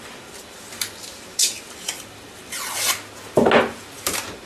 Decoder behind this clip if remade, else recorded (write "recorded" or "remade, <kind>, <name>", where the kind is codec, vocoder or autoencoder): recorded